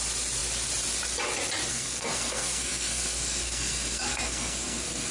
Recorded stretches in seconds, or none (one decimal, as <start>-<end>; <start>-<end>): 0.0-1.7